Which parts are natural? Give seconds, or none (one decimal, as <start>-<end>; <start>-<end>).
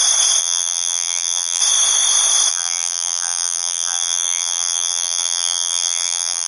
0.0-0.4; 1.6-2.5